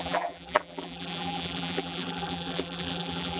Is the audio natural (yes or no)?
no